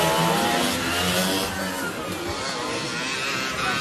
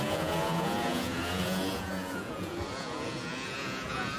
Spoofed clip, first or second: second